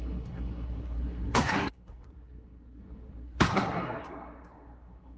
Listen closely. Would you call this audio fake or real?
fake